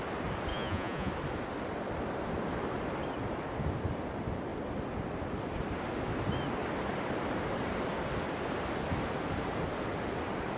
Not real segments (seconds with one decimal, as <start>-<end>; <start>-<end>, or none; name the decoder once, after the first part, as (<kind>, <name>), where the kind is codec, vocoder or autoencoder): 0.5-1.1 (vocoder, Vocos)